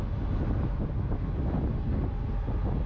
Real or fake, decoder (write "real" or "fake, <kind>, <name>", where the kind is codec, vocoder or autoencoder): real